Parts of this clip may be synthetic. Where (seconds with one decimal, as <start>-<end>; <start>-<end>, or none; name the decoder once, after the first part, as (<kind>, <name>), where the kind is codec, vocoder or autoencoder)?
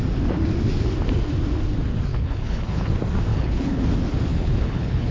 2.1-2.9 (codec, HILCodec); 3.3-3.8; 4.3-5.1